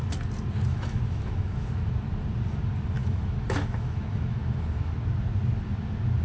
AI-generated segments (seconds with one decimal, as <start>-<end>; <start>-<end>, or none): 0.7-1.9; 3.0-4.9

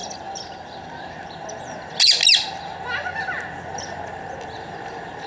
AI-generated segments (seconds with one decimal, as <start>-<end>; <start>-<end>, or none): none